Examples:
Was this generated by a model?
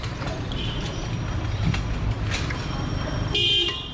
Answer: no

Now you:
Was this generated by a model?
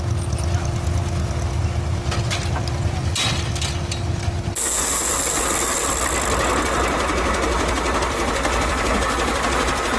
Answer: no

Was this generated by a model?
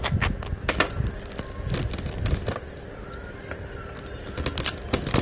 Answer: no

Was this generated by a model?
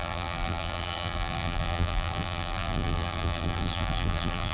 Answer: yes